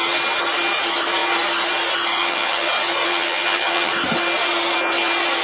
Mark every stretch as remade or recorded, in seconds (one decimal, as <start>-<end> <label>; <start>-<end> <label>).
0.0-2.2 recorded; 2.2-2.7 remade; 2.7-3.1 recorded; 3.1-3.9 remade; 3.9-5.4 recorded